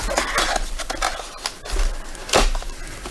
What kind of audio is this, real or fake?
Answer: real